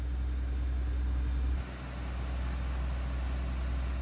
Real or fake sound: real